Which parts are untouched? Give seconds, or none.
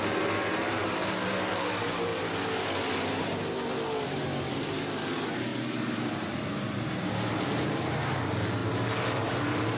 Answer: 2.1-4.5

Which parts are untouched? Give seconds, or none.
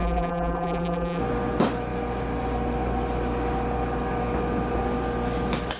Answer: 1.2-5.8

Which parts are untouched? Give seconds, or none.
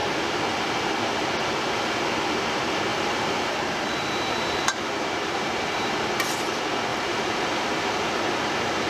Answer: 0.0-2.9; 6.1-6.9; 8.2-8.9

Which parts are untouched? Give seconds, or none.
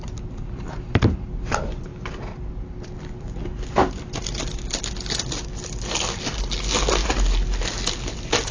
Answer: 0.0-8.5